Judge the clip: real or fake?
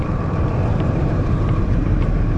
fake